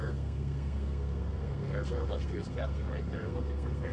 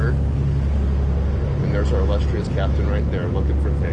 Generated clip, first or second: first